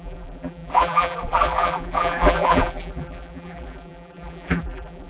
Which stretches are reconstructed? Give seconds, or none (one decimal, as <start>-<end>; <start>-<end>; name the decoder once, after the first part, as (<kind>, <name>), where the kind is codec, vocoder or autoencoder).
0.0-5.1 (vocoder, BigVGAN v2)